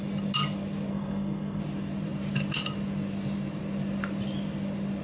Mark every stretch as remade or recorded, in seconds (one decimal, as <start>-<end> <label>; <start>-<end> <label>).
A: 0.0-0.9 recorded; 0.9-1.6 remade; 1.6-5.0 recorded